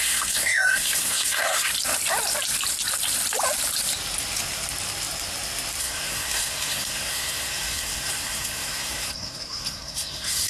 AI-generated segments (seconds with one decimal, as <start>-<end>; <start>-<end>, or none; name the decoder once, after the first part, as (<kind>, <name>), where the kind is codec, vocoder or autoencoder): 0.0-1.7 (codec, SNAC); 5.8-10.5